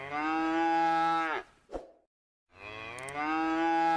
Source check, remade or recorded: recorded